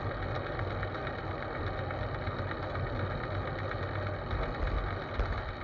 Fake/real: real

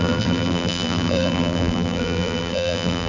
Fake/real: fake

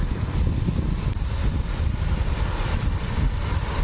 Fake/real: fake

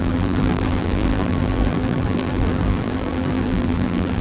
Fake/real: fake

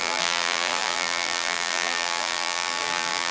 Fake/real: fake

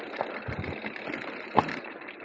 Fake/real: fake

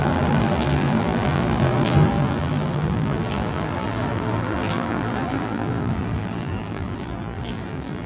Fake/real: fake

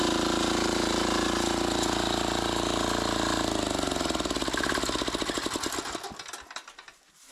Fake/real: real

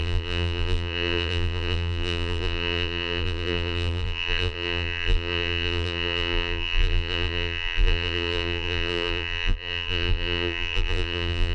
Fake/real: fake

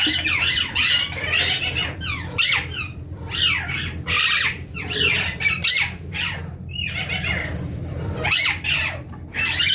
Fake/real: fake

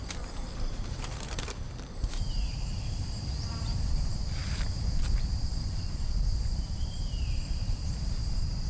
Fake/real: fake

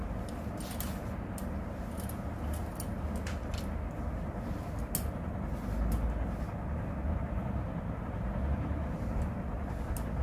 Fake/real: real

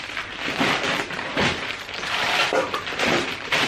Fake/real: fake